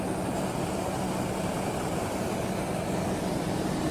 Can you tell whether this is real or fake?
real